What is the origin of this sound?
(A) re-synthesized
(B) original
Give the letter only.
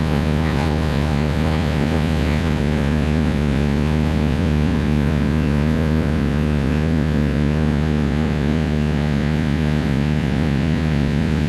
A